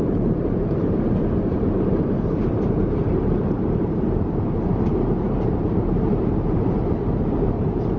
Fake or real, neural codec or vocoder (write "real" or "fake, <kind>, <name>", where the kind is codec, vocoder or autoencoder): fake, vocoder, BigVGAN v2